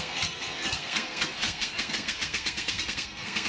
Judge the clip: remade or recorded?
remade